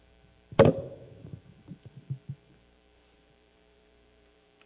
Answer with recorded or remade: remade